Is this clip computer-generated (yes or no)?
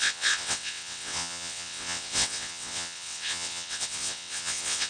yes